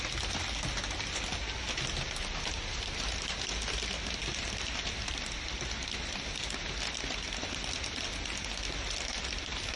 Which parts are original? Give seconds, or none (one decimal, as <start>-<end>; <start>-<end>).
0.0-9.8